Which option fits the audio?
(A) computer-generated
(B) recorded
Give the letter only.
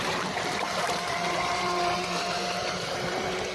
A